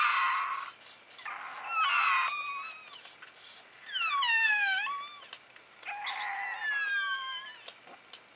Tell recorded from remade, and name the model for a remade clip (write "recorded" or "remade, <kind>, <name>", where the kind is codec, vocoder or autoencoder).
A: recorded